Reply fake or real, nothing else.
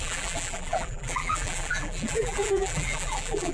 fake